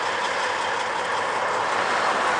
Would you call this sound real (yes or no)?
yes